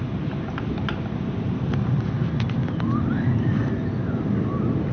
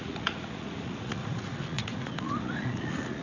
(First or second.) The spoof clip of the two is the second